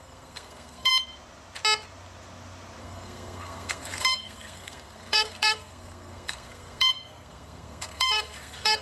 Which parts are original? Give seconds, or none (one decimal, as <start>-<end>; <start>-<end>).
0.9-2.8